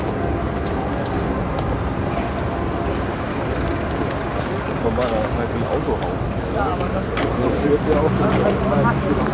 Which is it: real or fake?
real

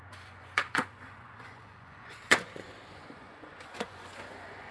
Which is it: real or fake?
fake